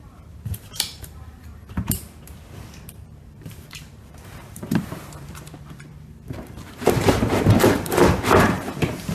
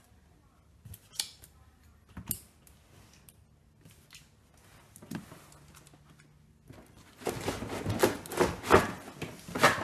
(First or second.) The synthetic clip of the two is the first